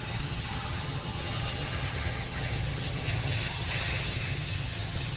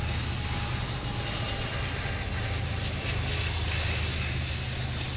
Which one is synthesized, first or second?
first